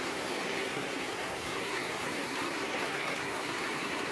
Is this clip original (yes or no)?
no